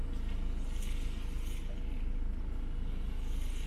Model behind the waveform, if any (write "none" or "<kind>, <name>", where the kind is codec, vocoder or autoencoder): none